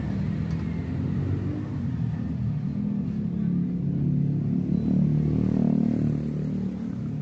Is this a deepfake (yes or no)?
no